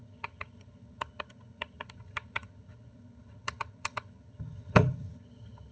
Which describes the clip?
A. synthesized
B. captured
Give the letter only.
A